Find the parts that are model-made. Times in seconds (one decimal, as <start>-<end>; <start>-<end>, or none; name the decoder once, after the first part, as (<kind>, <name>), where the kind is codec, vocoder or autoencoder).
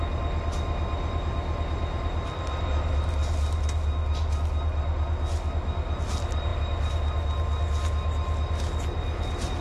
none